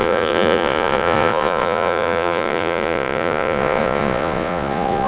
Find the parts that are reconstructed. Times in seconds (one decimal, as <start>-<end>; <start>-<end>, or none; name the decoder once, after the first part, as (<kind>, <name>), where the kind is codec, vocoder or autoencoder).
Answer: 0.0-5.1 (vocoder, Vocos)